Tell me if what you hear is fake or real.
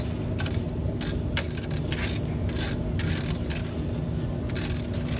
real